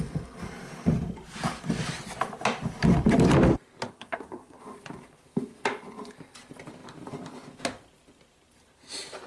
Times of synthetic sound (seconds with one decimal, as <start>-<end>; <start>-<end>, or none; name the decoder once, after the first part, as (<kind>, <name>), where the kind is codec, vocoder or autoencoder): 3.9-4.6 (codec, SNAC)